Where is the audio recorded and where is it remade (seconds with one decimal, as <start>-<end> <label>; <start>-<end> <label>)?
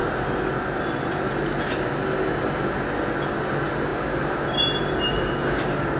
0.0-6.0 recorded